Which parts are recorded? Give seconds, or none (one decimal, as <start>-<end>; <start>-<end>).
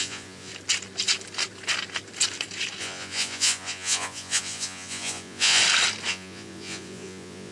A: 0.5-2.8; 5.6-6.1